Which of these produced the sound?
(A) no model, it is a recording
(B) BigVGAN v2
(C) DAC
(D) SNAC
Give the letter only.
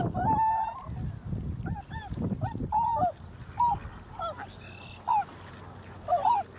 A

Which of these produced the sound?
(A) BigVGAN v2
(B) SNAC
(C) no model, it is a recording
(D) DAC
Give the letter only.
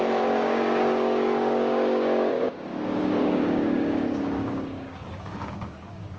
D